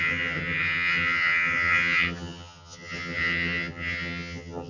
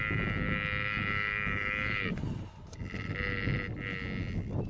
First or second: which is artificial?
first